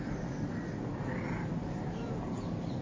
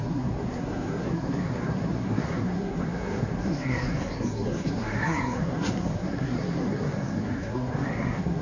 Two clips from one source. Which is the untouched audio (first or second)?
first